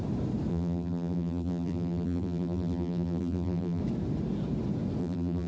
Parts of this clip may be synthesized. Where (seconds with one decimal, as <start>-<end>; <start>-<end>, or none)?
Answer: 0.5-3.8; 5.0-5.5